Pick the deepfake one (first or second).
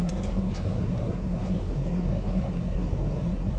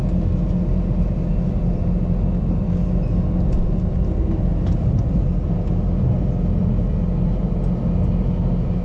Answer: first